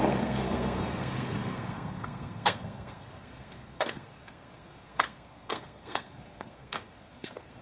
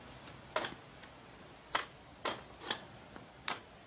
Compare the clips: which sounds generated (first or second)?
first